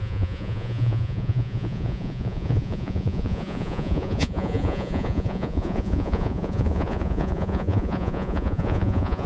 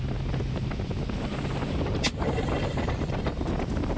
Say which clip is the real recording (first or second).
second